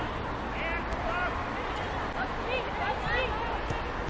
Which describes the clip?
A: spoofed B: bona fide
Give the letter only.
B